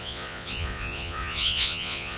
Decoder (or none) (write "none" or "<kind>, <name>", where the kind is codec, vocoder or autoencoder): vocoder, Vocos